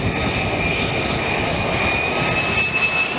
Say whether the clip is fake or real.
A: real